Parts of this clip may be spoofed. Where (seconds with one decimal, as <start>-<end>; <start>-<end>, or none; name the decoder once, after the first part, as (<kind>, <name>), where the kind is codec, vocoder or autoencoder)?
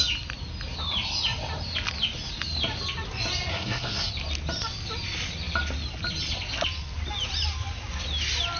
3.5-4.1 (codec, SNAC)